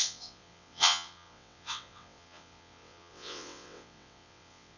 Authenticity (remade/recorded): remade